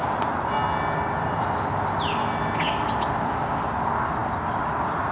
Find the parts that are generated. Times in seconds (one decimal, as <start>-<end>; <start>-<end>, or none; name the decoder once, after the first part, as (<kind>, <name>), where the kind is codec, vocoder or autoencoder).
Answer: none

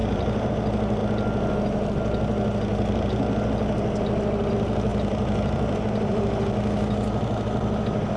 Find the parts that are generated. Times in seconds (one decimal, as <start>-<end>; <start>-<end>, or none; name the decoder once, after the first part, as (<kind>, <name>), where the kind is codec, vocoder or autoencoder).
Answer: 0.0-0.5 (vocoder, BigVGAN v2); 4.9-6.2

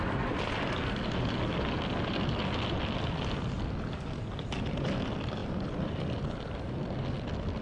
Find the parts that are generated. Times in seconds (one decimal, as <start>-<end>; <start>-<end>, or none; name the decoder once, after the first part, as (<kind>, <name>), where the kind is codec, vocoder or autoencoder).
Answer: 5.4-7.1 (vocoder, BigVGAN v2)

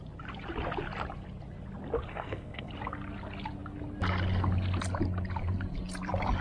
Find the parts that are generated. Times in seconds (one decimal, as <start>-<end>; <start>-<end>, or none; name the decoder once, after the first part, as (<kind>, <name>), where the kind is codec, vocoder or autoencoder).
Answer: 2.1-2.7 (codec, SNAC)

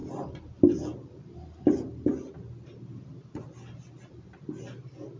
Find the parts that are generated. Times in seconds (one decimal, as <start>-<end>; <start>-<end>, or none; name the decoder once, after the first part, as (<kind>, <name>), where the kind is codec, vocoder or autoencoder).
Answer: none

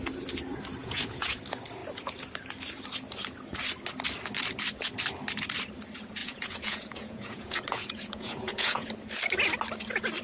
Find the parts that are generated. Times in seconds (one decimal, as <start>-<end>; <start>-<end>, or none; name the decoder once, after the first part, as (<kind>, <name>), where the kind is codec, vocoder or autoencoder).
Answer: 0.8-1.4 (vocoder, Vocos); 6.2-8.9

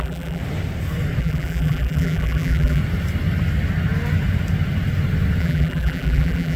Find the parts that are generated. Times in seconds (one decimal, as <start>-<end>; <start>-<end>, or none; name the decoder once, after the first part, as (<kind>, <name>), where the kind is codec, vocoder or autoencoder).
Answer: 0.0-0.4 (vocoder, BigVGAN v2); 1.2-2.8; 5.4-6.6

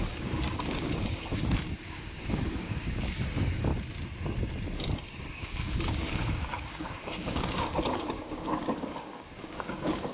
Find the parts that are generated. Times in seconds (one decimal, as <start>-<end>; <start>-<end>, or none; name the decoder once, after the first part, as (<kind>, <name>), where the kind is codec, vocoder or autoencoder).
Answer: 0.0-3.7 (codec, DAC); 5.2-10.1